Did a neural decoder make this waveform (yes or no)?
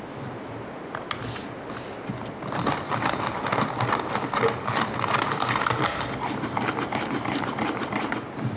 no